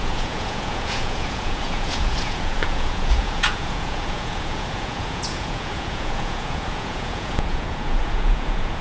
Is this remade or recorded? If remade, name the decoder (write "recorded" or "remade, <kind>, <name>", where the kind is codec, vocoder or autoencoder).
remade, vocoder, Vocos